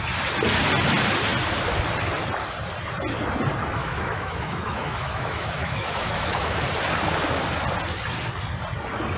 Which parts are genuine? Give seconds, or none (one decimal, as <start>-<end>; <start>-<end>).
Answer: 0.0-3.8; 6.6-9.2